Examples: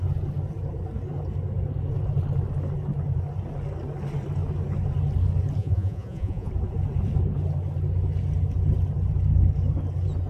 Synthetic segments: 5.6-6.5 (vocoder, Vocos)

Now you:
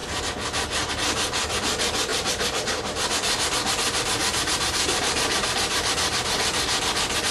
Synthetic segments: 2.1-3.0 (vocoder, BigVGAN v2); 4.2-5.9

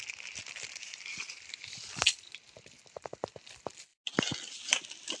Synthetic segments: none

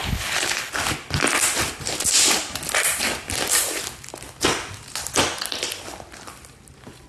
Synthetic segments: 0.0-0.7 (codec, HILCodec)

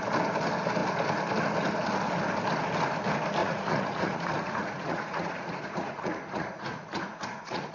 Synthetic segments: 3.4-7.7 (vocoder, Vocos)